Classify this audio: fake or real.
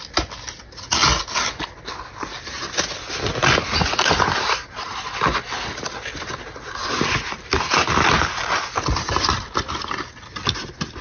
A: real